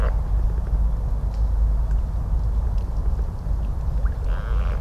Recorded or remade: recorded